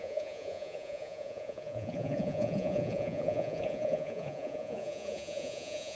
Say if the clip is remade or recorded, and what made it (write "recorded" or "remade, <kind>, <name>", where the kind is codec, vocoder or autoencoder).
remade, vocoder, Vocos